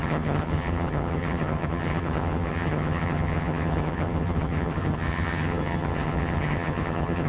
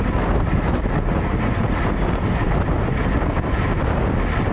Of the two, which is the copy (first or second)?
first